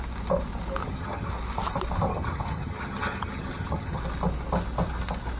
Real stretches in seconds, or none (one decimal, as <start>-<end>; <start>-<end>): 0.0-0.8; 1.3-2.1; 4.0-5.4